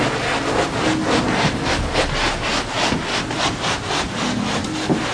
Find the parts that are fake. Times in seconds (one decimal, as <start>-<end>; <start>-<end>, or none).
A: none